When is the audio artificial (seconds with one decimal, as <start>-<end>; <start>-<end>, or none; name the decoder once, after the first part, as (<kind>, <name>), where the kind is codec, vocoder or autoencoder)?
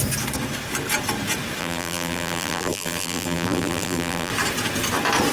1.6-4.3 (vocoder, BigVGAN v2)